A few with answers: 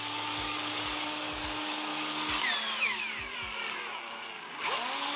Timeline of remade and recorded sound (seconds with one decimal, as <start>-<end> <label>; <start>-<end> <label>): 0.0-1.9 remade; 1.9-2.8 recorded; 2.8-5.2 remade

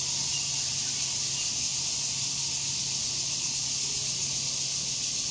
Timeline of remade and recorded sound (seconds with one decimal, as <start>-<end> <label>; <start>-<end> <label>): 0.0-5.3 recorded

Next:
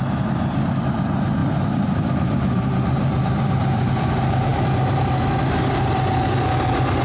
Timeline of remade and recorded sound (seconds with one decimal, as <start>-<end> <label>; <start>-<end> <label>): 0.0-1.4 recorded; 1.4-3.9 remade; 3.9-7.0 recorded